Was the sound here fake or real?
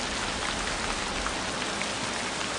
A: real